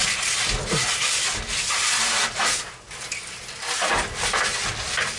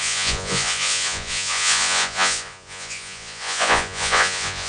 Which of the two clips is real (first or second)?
first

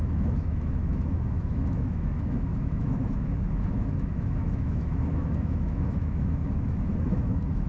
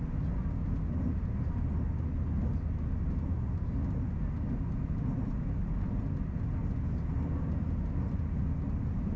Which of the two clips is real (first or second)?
second